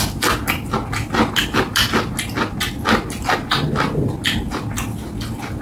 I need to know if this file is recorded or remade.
recorded